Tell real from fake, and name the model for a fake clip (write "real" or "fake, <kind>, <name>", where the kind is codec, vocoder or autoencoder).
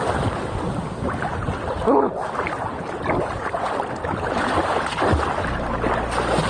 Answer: real